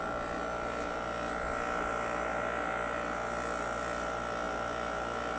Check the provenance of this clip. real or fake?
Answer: real